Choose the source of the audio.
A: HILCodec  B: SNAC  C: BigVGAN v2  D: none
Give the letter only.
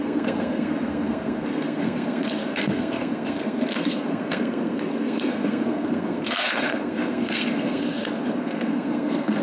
B